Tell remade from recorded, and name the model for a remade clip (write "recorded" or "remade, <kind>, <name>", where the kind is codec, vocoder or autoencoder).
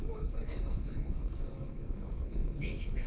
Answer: remade, codec, SNAC